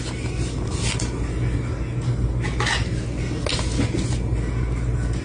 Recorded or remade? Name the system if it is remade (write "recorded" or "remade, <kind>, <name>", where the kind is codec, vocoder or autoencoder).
recorded